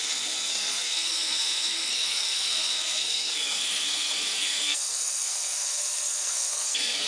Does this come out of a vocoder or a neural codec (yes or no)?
yes